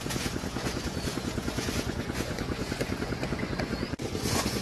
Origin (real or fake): fake